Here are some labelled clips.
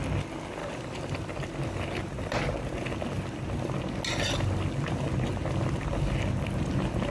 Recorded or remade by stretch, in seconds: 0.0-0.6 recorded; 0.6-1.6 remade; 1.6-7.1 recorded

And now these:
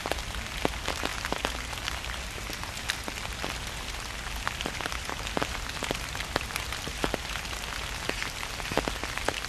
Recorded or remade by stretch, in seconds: 0.0-9.5 recorded

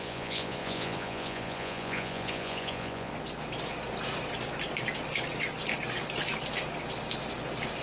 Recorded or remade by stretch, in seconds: 0.0-3.1 remade; 3.1-7.8 recorded

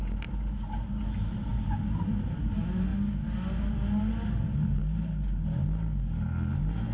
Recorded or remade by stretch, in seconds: 0.0-6.9 recorded